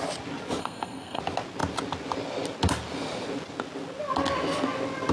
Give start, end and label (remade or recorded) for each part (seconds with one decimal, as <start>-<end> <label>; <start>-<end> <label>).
0.0-0.6 recorded; 0.6-1.2 remade; 1.2-5.1 recorded

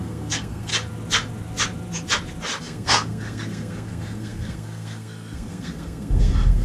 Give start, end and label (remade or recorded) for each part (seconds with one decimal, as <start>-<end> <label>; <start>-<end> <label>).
0.0-0.7 remade; 0.7-2.6 recorded; 2.6-6.6 remade

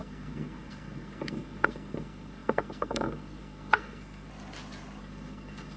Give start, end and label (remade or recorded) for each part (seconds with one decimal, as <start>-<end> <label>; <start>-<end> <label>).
0.0-4.3 remade; 4.3-5.0 recorded; 5.0-5.8 remade

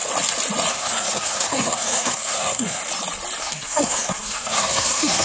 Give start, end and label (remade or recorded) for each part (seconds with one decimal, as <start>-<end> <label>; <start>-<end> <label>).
0.0-0.7 recorded; 0.7-2.8 remade; 2.8-3.4 recorded; 3.4-5.2 remade

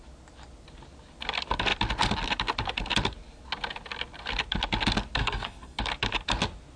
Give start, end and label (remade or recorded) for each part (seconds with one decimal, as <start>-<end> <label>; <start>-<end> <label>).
0.0-5.2 recorded; 5.2-5.8 remade; 5.8-6.8 recorded

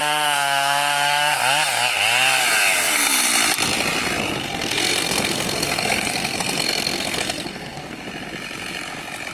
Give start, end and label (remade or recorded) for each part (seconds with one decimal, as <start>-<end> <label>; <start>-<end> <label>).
0.0-1.4 remade; 1.4-4.4 recorded; 4.4-8.0 remade; 8.0-9.3 recorded